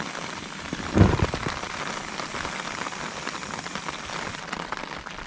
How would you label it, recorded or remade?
recorded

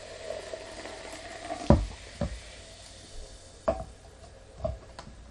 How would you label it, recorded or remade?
recorded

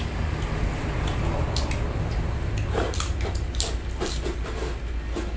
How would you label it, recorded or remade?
recorded